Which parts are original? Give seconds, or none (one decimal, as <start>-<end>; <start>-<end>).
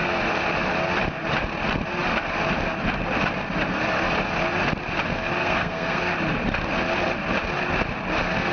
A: 0.0-5.4; 6.0-8.5